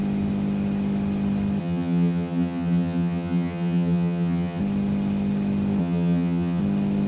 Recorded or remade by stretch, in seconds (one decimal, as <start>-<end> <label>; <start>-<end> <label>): 0.0-1.6 recorded; 1.6-4.6 remade; 4.6-5.8 recorded; 5.8-6.6 remade; 6.6-7.1 recorded